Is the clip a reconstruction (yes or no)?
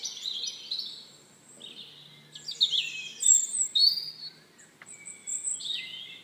no